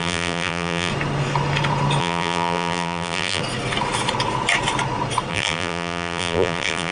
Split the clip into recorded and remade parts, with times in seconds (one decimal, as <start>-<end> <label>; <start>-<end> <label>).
0.0-0.9 remade; 0.9-2.0 recorded; 2.0-3.4 remade; 3.4-5.3 recorded; 5.3-6.9 remade